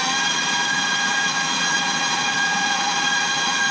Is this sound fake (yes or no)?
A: yes